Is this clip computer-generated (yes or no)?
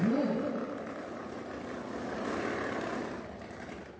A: no